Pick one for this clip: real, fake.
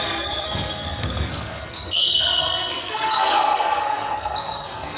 fake